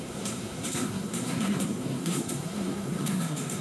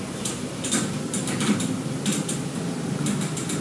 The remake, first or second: first